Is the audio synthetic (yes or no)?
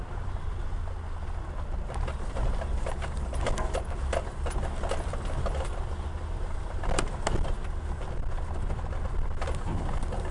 no